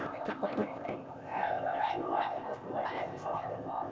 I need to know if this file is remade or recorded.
remade